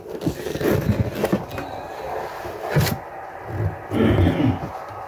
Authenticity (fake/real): real